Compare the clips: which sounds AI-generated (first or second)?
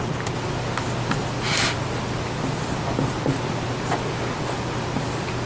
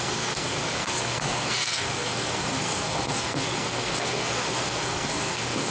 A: second